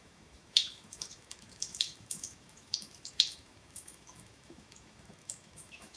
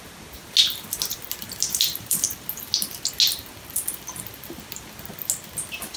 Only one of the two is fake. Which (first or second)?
first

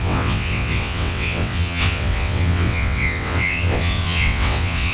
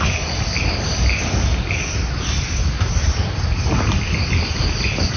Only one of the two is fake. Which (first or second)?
first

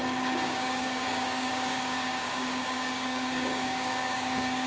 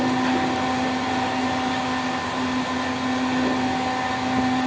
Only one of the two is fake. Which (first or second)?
first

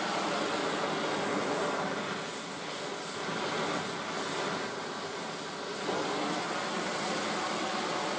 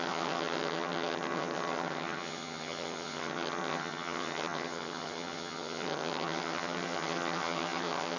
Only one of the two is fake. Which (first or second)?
second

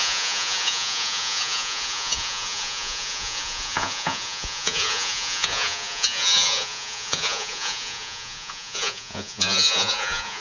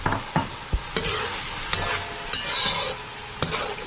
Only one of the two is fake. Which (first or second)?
first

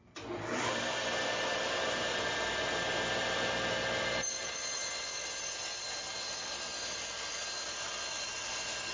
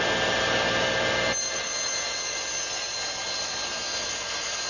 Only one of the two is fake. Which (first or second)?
first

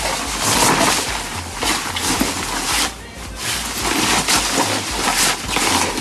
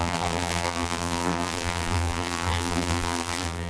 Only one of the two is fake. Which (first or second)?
second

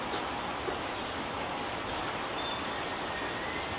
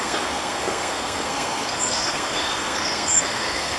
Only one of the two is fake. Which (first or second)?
second